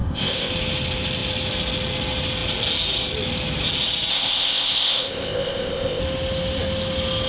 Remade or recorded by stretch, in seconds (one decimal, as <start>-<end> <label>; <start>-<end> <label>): 0.0-0.5 remade; 0.5-4.1 recorded; 4.1-6.0 remade; 6.0-7.3 recorded

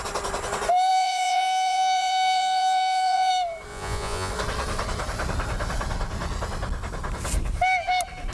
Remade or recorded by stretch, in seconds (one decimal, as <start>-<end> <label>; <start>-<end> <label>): 0.0-0.9 recorded; 0.9-3.3 remade; 3.3-3.7 recorded; 3.7-4.3 remade; 4.3-8.3 recorded

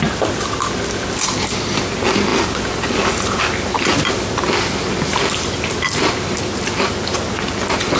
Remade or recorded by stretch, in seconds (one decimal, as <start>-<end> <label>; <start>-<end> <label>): 0.0-8.0 recorded

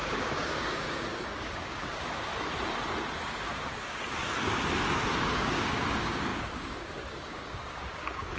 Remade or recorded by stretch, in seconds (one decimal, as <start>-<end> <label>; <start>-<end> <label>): 0.0-2.3 remade; 2.3-3.2 recorded; 3.2-4.2 remade; 4.2-5.1 recorded; 5.1-8.4 remade

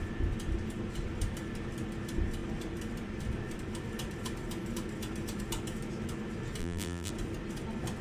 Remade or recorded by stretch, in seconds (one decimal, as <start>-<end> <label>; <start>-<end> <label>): 0.0-6.6 recorded; 6.6-7.1 remade; 7.1-8.0 recorded

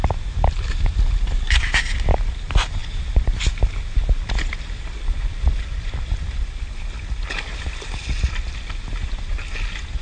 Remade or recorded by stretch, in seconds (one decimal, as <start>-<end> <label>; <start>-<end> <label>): 0.0-10.0 recorded